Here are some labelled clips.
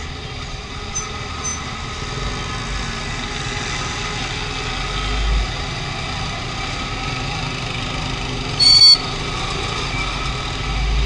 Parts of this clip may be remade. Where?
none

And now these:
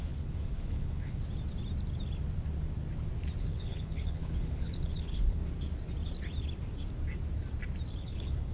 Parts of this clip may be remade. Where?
0.0-1.2; 3.4-5.4; 7.9-8.5

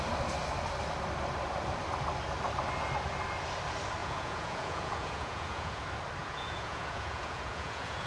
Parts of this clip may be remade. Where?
4.0-5.8; 6.2-8.1

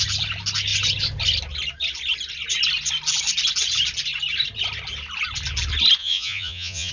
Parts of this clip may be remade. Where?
6.0-6.9